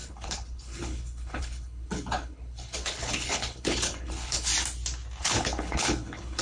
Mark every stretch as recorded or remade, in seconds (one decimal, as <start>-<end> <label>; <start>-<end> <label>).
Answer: 0.0-4.5 remade; 4.5-5.2 recorded; 5.2-6.4 remade